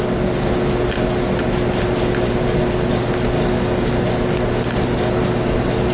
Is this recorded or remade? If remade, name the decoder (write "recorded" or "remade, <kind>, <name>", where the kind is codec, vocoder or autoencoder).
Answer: recorded